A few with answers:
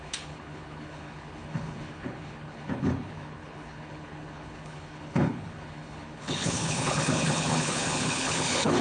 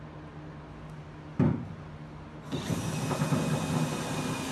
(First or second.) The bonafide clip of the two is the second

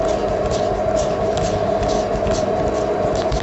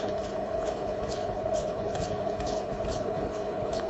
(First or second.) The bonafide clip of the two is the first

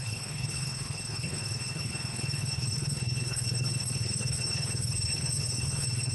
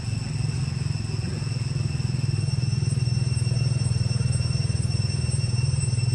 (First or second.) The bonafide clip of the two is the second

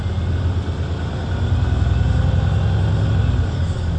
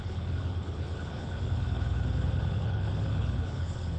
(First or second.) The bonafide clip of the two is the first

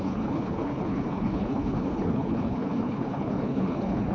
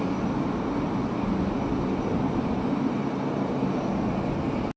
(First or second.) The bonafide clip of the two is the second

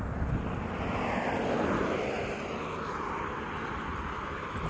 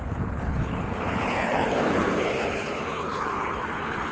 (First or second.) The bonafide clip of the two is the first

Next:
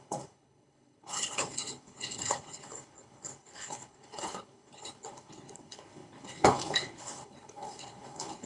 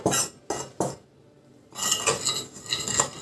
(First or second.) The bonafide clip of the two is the second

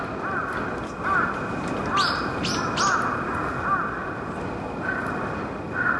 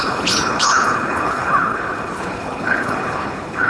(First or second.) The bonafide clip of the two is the first